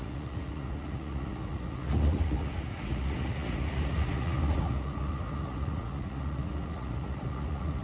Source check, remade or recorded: remade